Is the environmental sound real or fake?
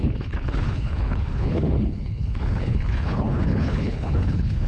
fake